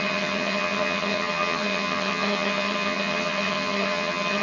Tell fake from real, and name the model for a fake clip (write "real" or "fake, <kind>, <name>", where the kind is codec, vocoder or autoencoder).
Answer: fake, vocoder, HiFi-GAN